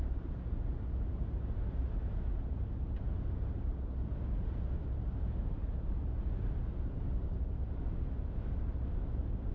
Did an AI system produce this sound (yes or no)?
no